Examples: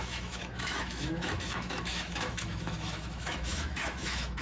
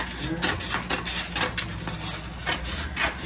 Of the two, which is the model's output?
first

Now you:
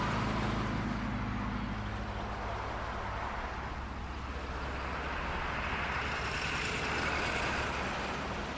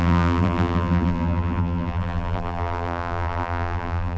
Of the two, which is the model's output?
second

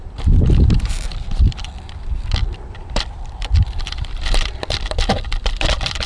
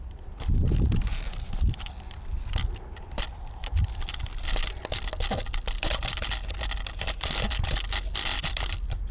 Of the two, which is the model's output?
first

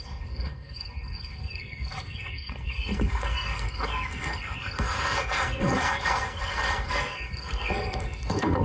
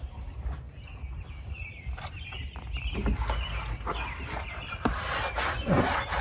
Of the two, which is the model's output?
first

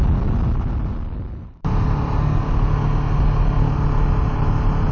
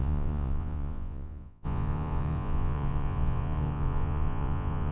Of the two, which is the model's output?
second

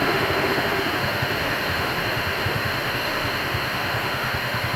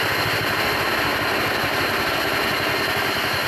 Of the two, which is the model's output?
first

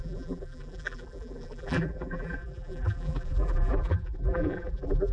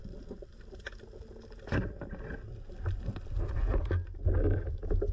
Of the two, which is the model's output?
first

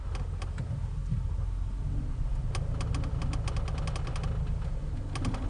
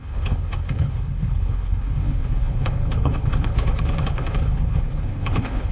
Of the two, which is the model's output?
second